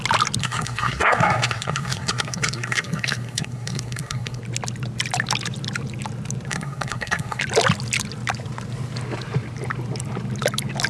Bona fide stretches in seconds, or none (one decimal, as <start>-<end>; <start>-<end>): 0.0-0.4; 4.4-6.5; 7.4-10.9